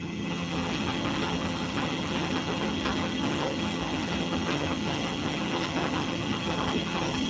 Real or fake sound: fake